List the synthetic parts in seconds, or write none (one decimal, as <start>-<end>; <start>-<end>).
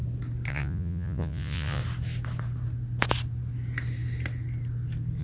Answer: 0.5-1.8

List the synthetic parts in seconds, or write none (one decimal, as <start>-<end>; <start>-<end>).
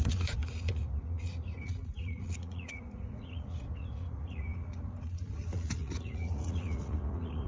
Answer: 0.0-7.5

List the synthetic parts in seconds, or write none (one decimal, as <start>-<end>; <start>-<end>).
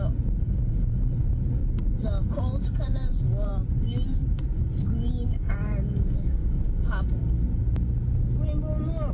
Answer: 0.0-1.6; 2.2-3.5; 5.5-7.2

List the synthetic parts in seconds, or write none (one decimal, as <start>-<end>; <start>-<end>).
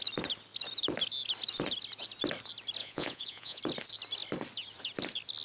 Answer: 2.8-3.6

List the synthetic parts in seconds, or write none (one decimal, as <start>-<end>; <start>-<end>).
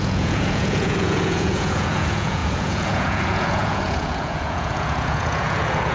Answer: 0.0-5.9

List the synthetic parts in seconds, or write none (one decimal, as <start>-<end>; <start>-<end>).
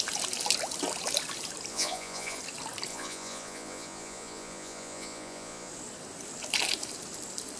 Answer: 1.7-2.4; 2.9-5.7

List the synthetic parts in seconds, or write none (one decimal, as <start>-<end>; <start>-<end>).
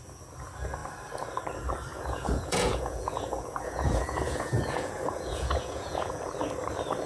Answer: 1.9-6.2